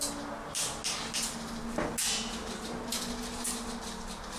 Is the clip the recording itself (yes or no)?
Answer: yes